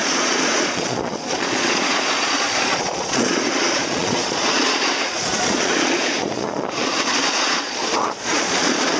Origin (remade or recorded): remade